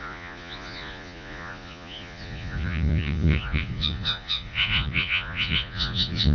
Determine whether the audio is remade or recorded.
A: remade